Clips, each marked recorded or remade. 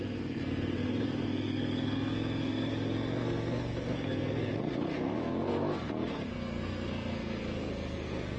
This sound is remade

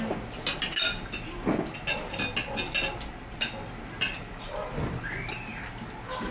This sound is recorded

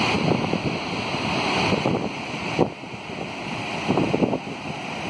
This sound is recorded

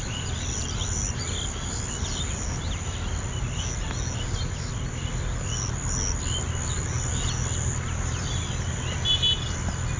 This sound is recorded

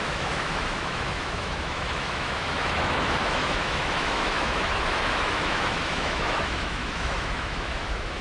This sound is remade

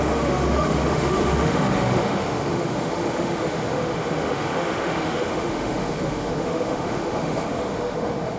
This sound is remade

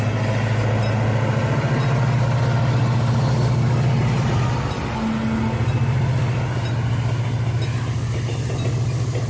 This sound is recorded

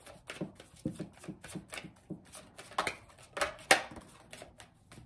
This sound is recorded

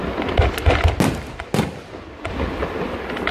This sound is recorded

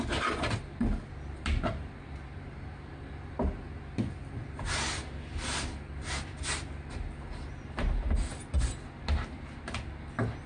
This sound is recorded